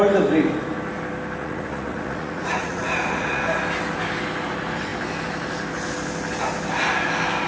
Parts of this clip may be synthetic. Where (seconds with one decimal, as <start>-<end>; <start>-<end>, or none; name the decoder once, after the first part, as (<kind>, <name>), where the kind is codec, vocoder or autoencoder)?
1.4-3.4 (vocoder, Vocos)